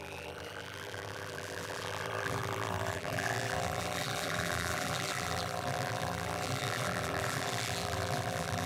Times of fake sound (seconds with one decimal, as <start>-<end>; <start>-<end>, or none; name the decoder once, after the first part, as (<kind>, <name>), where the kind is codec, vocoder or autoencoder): 0.0-8.7 (vocoder, BigVGAN v2)